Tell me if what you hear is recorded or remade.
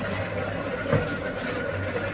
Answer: recorded